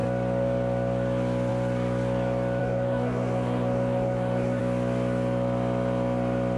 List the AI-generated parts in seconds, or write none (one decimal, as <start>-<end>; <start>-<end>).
2.6-4.6